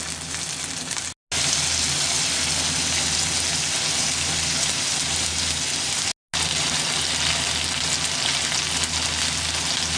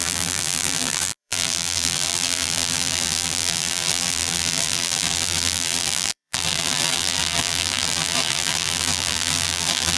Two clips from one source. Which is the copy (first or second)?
second